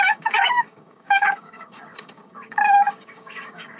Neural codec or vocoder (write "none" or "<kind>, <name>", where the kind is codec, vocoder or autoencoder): codec, DAC